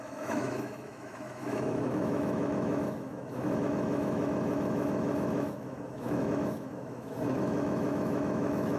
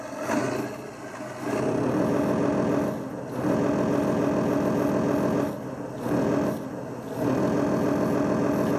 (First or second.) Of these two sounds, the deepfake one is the first